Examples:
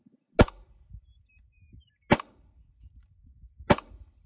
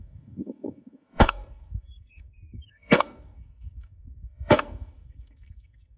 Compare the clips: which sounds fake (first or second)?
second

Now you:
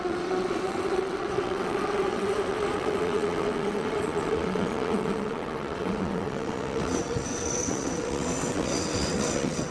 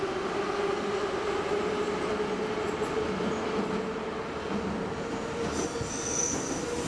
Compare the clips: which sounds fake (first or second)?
first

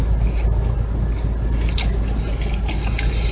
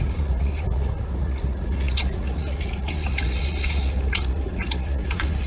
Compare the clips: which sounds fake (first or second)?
second